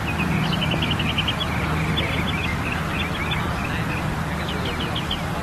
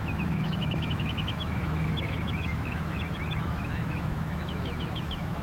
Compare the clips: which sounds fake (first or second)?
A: second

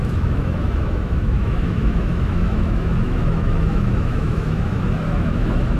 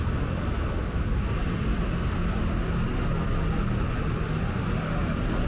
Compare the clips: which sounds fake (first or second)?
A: first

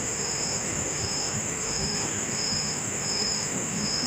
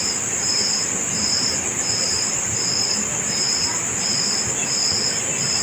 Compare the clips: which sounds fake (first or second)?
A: first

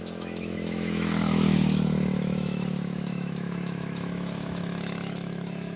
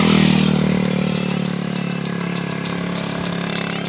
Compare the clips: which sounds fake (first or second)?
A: first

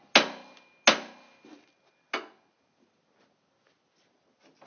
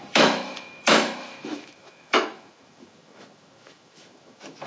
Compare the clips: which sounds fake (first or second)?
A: second